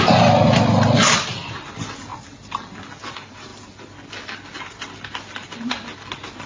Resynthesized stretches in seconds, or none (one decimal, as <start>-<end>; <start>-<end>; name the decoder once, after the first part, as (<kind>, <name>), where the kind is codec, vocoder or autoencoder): none